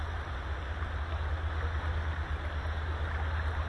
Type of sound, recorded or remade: recorded